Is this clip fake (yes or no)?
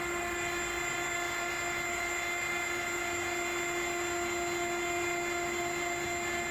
no